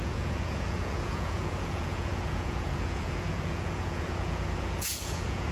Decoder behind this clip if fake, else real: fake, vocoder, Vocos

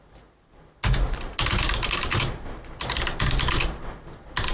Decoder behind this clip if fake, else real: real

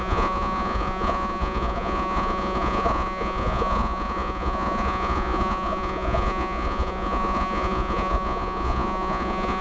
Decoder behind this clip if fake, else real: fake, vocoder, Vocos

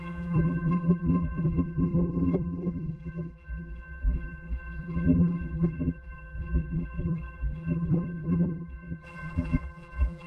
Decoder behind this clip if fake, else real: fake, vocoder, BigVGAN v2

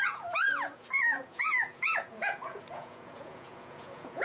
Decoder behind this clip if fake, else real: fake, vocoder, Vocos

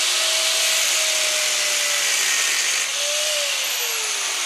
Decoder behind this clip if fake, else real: real